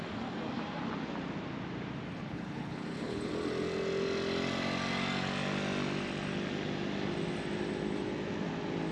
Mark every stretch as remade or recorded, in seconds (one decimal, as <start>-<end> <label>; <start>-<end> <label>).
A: 0.0-2.1 recorded; 2.1-3.3 remade; 3.3-8.9 recorded